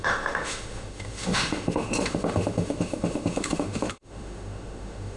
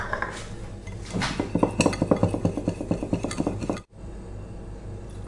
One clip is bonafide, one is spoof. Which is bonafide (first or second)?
second